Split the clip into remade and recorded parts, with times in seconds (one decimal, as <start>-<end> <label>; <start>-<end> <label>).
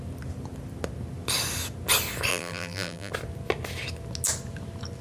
0.0-2.3 recorded; 2.3-3.1 remade; 3.1-5.0 recorded